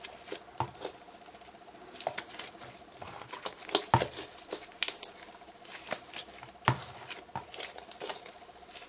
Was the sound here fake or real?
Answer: real